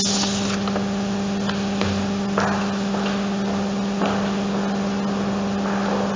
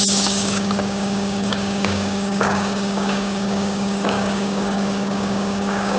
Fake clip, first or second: second